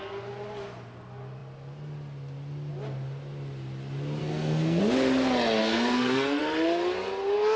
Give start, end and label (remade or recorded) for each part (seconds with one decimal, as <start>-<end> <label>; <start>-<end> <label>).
0.0-4.2 recorded; 4.2-4.8 remade; 4.8-5.6 recorded; 5.6-6.4 remade; 6.4-7.6 recorded